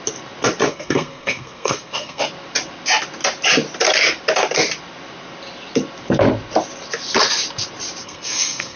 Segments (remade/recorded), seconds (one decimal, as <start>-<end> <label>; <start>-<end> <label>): 0.0-0.7 recorded; 0.7-2.2 remade; 2.2-8.0 recorded; 8.0-8.8 remade